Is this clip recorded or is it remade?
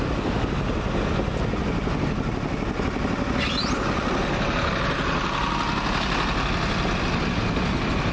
recorded